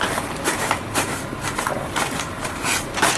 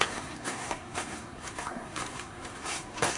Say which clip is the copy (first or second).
second